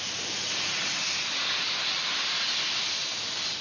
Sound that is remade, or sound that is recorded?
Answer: recorded